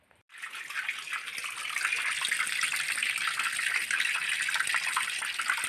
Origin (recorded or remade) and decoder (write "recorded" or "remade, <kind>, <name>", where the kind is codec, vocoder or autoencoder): recorded